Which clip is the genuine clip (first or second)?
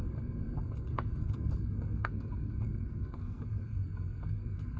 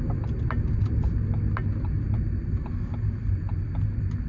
second